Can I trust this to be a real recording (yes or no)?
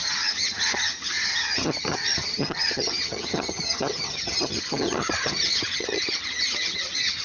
no